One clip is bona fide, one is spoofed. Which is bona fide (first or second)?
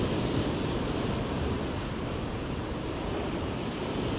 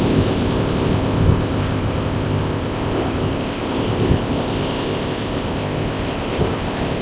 first